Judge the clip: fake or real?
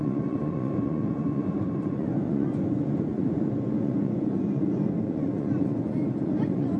fake